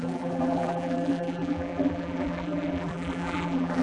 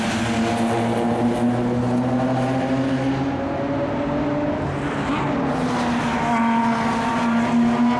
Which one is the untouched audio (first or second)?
second